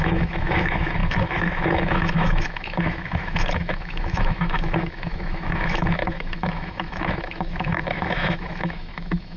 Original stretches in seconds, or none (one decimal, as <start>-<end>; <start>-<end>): none